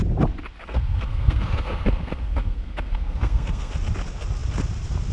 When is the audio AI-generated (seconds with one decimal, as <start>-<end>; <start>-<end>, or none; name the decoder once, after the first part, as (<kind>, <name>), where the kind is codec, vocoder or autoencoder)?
0.6-3.7 (codec, SNAC)